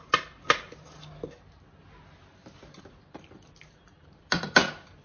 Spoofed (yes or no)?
no